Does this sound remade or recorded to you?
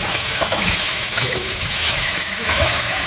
remade